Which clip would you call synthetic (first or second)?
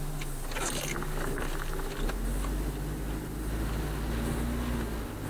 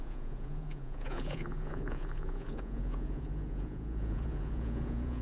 second